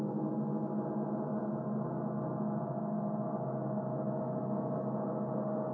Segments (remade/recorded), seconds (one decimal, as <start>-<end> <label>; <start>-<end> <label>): 0.0-5.7 recorded